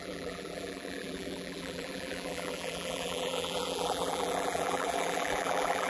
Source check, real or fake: fake